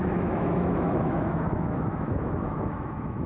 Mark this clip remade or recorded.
remade